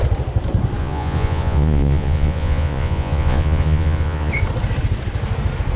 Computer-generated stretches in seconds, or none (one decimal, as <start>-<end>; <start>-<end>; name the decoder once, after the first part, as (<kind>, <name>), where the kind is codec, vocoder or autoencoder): 0.8-4.3 (vocoder, Vocos)